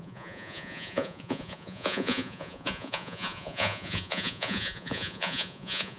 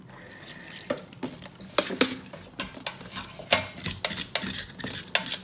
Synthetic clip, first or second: first